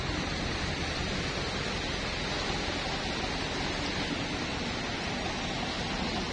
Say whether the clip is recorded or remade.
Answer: recorded